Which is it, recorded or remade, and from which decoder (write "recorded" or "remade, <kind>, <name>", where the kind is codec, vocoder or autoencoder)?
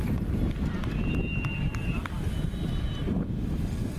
remade, vocoder, BigVGAN v2